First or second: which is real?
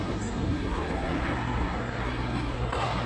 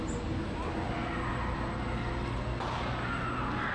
second